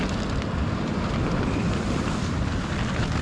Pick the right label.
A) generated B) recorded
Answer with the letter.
B